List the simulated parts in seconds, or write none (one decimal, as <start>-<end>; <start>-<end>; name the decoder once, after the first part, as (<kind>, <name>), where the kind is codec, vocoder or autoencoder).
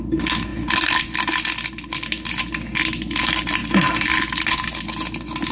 none